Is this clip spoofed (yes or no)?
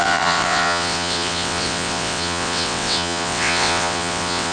yes